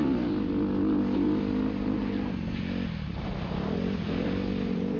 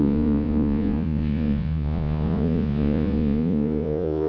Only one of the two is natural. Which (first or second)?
first